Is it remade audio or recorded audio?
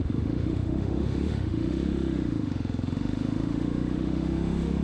remade